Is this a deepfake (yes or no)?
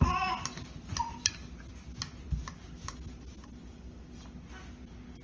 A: no